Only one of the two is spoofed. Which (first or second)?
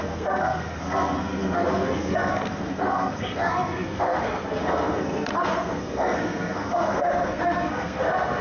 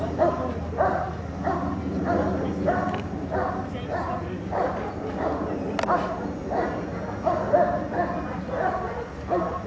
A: first